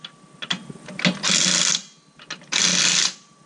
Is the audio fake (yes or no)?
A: no